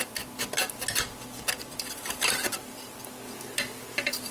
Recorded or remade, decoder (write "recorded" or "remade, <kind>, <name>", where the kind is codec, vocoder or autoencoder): recorded